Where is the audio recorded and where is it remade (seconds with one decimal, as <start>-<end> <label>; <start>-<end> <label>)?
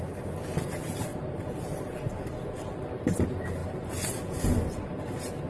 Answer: 0.0-1.1 recorded; 1.1-1.8 remade; 1.8-5.5 recorded